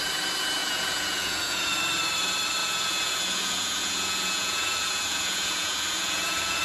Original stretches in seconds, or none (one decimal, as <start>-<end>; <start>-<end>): 0.0-0.6; 1.8-2.6